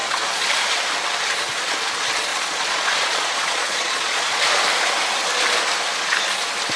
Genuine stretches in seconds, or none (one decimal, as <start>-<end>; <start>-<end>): 0.5-2.3; 4.4-6.8